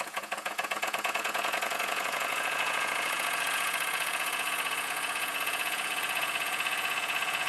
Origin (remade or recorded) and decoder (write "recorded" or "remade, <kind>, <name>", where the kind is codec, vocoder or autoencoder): remade, vocoder, Vocos